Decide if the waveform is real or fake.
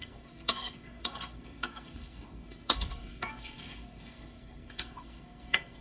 fake